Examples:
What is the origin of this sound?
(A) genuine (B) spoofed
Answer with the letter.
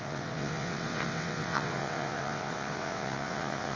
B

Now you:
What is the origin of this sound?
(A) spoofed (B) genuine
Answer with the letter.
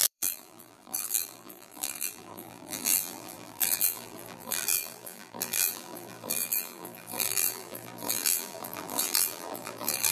A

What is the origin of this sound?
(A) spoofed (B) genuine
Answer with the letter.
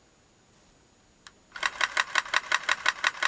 B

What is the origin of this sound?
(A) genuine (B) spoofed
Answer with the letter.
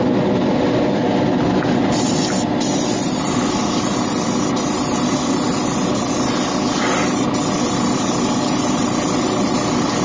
A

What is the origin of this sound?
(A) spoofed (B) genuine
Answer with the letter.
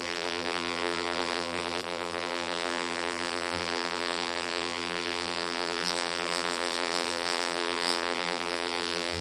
A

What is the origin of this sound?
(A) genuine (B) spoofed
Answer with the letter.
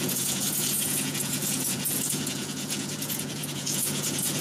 B